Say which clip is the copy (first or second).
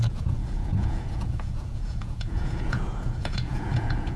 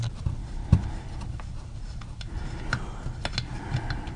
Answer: first